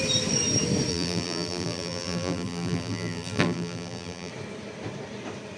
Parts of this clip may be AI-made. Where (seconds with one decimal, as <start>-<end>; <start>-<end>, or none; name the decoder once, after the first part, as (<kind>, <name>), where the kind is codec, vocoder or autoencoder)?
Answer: 0.9-4.3 (vocoder, BigVGAN v2)